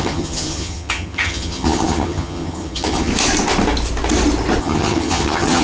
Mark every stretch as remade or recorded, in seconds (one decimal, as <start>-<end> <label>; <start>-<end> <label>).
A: 0.0-3.1 remade; 3.1-4.6 recorded; 4.6-5.6 remade